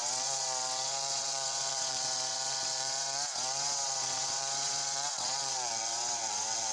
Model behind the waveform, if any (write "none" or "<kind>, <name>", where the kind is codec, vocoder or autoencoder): vocoder, WaveNeXt